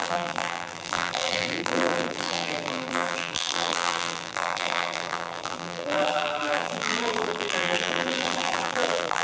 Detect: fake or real fake